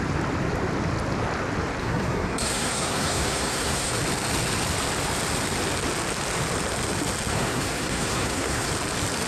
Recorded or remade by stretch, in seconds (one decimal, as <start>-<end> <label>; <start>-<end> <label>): 0.0-1.8 recorded; 1.8-3.9 remade; 3.9-7.3 recorded; 7.3-8.7 remade; 8.7-9.3 recorded